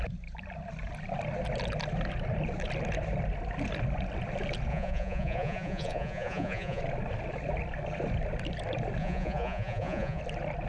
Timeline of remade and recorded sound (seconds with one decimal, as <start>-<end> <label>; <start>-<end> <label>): 0.0-4.7 recorded; 4.7-6.8 remade; 6.8-9.0 recorded; 9.0-10.2 remade; 10.2-10.7 recorded